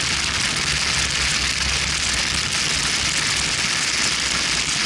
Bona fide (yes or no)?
yes